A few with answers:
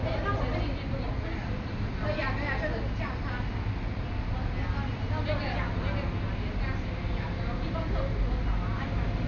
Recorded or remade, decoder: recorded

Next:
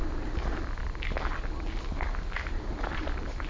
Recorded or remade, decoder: recorded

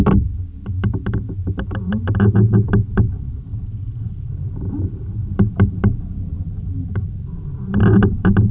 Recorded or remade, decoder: recorded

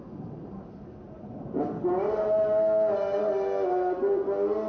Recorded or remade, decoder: recorded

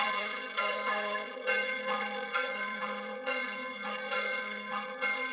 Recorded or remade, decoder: remade, vocoder, HiFi-GAN